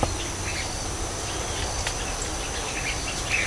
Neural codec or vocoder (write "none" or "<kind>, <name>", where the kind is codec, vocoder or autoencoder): none